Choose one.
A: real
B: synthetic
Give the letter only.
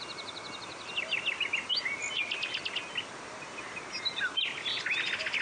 A